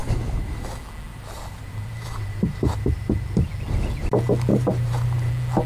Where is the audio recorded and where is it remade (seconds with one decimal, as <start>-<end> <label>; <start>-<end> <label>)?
0.0-0.7 remade; 0.7-1.1 recorded; 1.1-3.5 remade; 3.5-4.5 recorded; 4.5-5.3 remade; 5.3-5.7 recorded